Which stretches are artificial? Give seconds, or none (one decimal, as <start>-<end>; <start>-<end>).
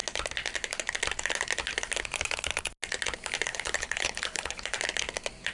3.5-4.6